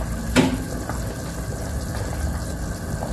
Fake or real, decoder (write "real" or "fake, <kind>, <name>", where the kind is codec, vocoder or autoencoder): real